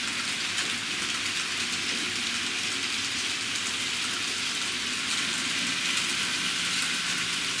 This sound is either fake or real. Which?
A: real